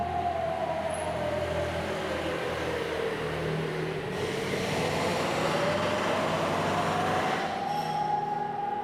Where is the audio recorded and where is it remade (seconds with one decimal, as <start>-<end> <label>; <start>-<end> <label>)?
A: 0.0-8.8 recorded